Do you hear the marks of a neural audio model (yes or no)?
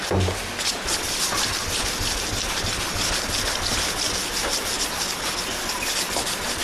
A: no